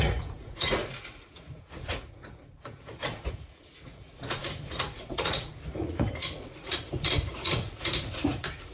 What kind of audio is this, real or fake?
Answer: fake